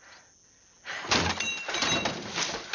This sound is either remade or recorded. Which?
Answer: recorded